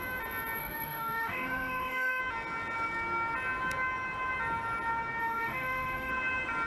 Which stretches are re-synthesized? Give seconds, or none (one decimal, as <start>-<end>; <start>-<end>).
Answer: 0.6-2.2; 5.2-6.1